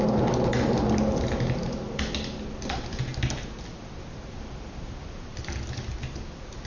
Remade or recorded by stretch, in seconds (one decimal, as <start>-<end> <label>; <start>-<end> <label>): 0.0-6.7 recorded

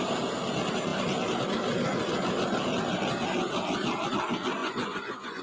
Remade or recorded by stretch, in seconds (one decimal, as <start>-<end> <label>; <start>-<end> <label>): 0.0-4.6 recorded; 4.6-5.4 remade

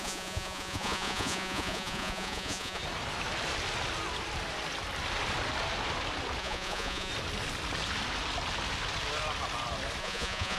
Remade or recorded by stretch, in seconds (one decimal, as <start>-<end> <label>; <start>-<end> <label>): 0.0-2.8 remade; 2.8-6.4 recorded; 6.4-7.1 remade; 7.1-10.0 recorded; 10.0-10.6 remade

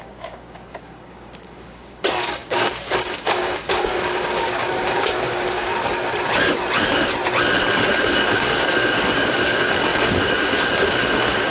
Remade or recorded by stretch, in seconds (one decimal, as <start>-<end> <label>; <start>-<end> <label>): 0.0-5.7 remade; 5.7-8.0 recorded; 8.0-11.5 remade

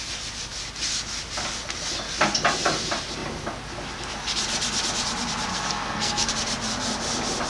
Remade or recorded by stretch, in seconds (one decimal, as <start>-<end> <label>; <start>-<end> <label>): 0.0-5.5 recorded; 5.5-6.3 remade; 6.3-7.5 recorded